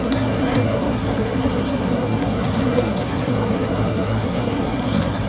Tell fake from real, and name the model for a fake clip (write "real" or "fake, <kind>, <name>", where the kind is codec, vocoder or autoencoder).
fake, codec, SNAC